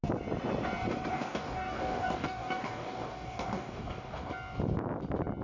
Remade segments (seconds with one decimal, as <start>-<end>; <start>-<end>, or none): 1.1-4.3